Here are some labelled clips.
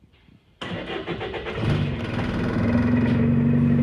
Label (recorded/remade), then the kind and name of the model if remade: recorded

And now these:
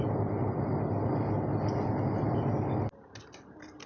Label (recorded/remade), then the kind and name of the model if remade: recorded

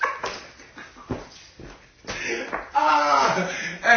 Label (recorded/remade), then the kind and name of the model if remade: recorded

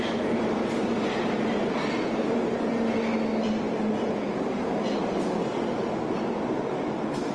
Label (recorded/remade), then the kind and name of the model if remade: recorded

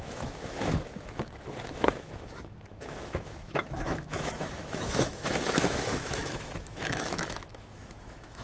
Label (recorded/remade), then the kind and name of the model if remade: remade, autoencoder, DAC-VAE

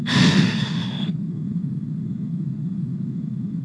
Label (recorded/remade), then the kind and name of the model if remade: remade, autoencoder, DAC-VAE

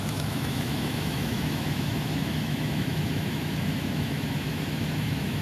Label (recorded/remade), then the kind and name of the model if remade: remade, autoencoder, DAC-VAE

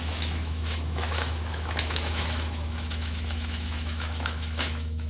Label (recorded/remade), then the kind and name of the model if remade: remade, autoencoder, DAC-VAE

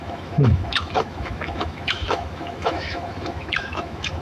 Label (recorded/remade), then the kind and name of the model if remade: remade, autoencoder, DAC-VAE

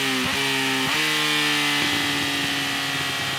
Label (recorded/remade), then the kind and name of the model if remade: recorded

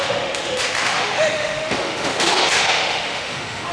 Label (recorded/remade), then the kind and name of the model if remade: remade, autoencoder, DAC-VAE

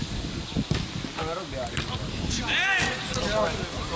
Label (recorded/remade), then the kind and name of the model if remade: recorded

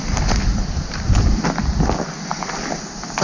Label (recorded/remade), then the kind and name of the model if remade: recorded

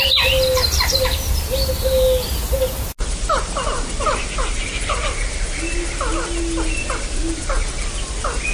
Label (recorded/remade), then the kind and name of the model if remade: recorded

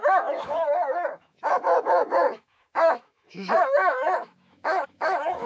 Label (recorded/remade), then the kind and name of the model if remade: remade, autoencoder, DAC-VAE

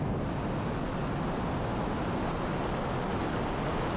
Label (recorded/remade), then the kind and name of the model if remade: recorded